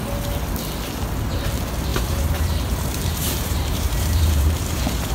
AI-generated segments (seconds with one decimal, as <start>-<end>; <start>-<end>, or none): 1.9-5.1